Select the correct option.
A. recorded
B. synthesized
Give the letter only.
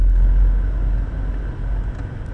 A